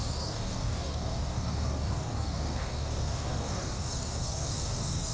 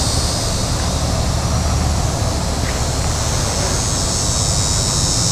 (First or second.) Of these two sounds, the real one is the second